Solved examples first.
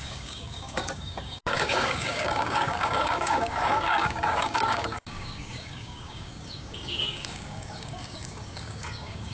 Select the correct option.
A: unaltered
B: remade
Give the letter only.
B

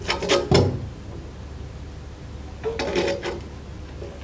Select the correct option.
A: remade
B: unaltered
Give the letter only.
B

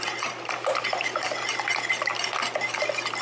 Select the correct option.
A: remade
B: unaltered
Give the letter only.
B